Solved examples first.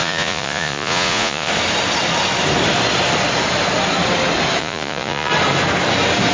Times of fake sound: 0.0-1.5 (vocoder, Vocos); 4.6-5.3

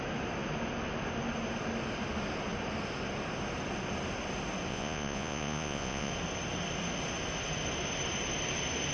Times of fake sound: 4.7-6.1 (vocoder, Vocos)